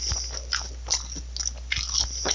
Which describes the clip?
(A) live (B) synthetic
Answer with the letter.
A